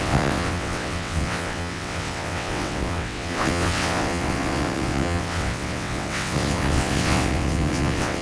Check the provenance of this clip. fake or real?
fake